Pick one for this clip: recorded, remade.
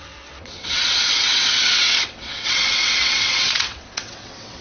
remade